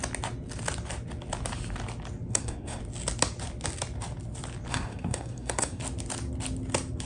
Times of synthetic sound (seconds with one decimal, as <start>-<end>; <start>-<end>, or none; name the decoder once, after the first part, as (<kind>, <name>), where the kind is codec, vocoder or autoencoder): 2.3-2.8 (codec, SNAC); 4.7-5.8